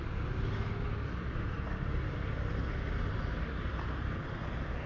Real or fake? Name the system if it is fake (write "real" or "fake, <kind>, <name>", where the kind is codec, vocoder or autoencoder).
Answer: real